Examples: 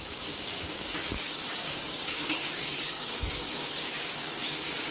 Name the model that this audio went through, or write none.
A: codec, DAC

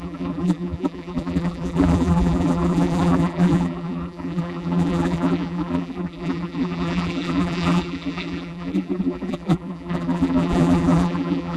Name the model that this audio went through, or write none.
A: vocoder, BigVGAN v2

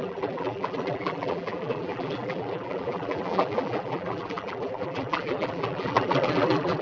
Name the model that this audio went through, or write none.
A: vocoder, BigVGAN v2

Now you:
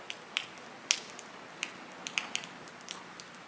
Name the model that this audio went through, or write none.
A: none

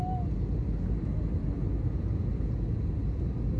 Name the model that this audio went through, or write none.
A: none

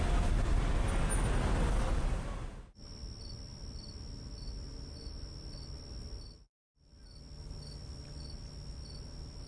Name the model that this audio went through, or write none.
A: none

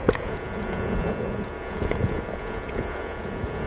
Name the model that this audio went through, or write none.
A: vocoder, Vocos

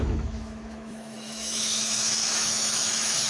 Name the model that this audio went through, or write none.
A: autoencoder, DAC-VAE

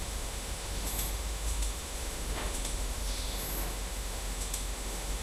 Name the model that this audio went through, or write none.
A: autoencoder, DAC-VAE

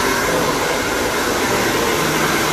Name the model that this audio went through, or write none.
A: none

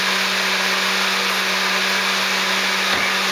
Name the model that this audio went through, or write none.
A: none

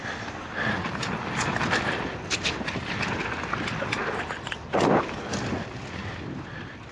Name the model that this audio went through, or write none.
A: none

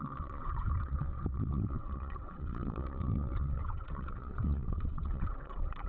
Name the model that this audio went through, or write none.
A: vocoder, WaveNeXt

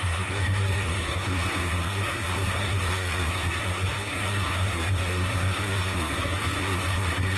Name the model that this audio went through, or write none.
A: codec, SNAC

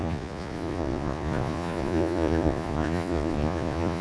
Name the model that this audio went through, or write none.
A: vocoder, Vocos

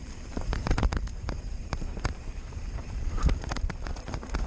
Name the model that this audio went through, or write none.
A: vocoder, BigVGAN v2